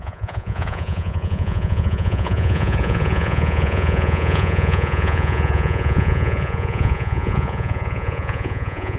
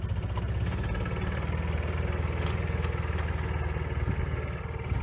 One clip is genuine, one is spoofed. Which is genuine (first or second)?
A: second